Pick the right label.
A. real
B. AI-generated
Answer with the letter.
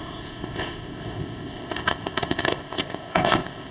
B